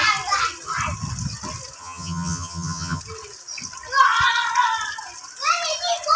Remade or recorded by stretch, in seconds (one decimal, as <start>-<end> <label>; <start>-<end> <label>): 0.0-1.8 recorded; 1.8-3.0 remade; 3.0-6.2 recorded